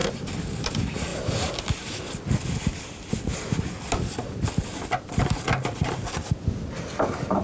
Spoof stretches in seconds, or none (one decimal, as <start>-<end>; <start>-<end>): none